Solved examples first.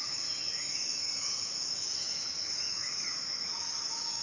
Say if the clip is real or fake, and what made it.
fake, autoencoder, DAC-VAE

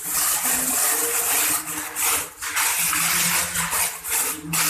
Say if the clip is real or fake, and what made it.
real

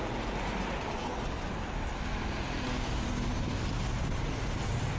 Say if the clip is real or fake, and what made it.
real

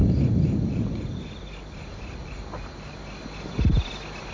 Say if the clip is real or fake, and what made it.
real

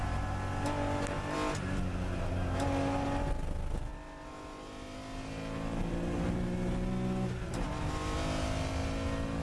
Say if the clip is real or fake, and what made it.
real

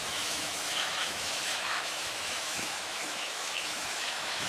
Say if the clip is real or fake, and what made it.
fake, autoencoder, DAC-VAE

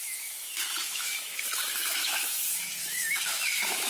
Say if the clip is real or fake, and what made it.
fake, autoencoder, DAC-VAE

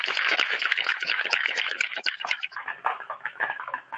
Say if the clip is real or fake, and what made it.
fake, autoencoder, DAC-VAE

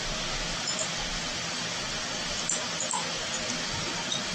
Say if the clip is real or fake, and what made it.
real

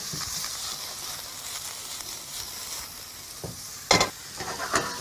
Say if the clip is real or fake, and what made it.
real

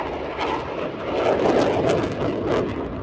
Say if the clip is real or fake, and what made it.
real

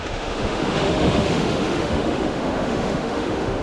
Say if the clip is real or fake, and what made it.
fake, autoencoder, DAC-VAE